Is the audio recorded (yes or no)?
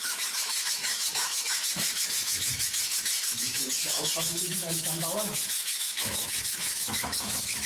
no